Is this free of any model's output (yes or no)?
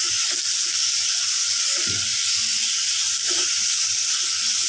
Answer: yes